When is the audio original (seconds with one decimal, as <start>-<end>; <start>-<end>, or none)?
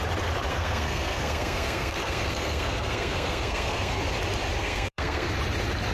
0.0-0.5; 4.0-4.6; 5.3-5.9